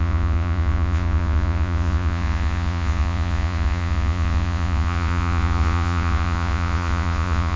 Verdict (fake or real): fake